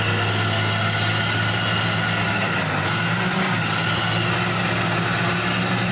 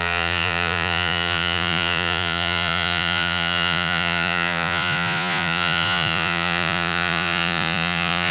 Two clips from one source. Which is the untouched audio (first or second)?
first